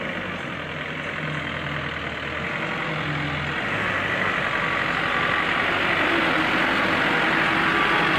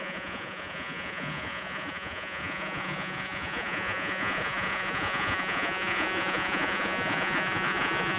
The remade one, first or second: second